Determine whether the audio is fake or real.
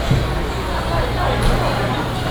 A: real